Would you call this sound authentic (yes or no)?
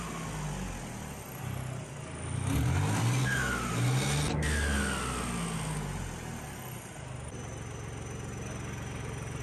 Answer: yes